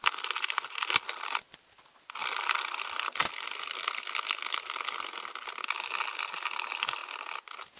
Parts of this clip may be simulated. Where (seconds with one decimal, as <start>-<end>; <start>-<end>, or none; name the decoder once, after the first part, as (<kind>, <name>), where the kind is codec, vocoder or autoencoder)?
none